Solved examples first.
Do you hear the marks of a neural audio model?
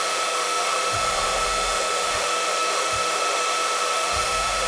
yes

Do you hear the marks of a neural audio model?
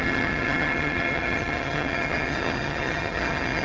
yes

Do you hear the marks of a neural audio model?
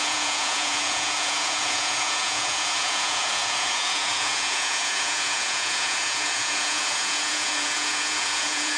yes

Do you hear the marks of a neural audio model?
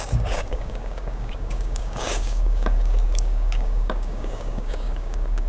yes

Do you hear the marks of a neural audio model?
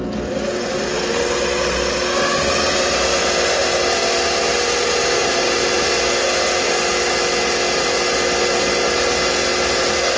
no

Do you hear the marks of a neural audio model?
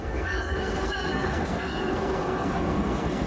yes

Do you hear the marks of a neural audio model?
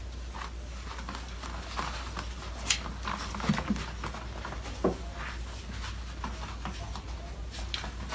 no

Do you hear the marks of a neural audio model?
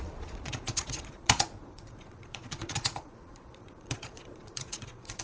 yes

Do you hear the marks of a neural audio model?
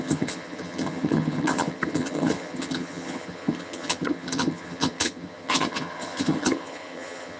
yes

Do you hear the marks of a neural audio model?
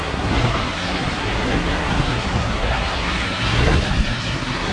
yes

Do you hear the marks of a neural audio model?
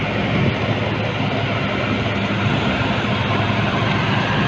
no